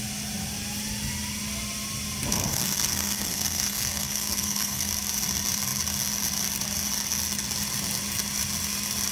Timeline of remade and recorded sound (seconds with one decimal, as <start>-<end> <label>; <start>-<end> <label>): 0.0-2.3 recorded; 2.3-4.9 remade; 4.9-9.1 recorded